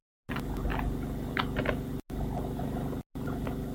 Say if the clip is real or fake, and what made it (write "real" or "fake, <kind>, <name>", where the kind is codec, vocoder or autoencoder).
real